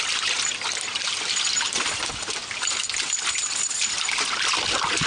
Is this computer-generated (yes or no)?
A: no